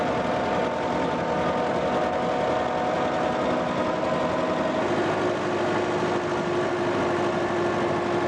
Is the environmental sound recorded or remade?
recorded